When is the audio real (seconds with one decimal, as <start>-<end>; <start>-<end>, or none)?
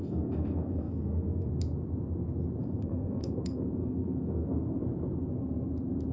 1.5-2.6; 4.8-6.1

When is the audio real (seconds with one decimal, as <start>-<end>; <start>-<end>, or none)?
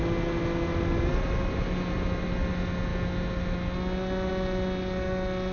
0.0-5.5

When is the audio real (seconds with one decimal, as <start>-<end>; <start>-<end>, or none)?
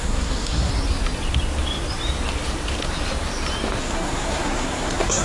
0.7-3.8